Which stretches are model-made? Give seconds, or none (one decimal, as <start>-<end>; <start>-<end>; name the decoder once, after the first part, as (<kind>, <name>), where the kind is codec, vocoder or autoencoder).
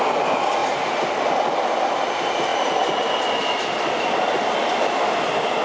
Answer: none